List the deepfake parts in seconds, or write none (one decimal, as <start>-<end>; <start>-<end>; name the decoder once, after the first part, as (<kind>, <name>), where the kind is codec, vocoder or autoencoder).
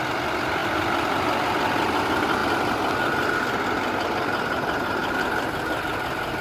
none